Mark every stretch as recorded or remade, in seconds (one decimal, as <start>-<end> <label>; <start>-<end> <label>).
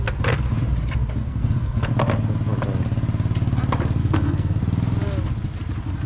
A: 0.0-1.2 recorded; 1.2-1.9 remade; 1.9-4.0 recorded; 4.0-4.6 remade; 4.6-6.1 recorded